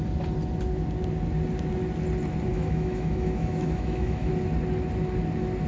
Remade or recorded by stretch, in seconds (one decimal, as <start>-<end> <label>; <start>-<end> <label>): 0.0-2.5 recorded; 2.5-4.3 remade; 4.3-5.7 recorded